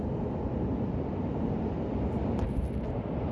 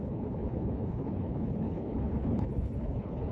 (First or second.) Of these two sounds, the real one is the first